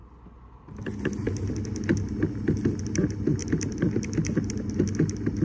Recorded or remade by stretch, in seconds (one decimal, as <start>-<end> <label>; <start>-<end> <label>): 0.0-5.4 recorded